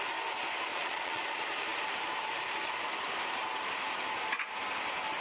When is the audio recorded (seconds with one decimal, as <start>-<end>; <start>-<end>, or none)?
0.0-0.7; 1.2-5.2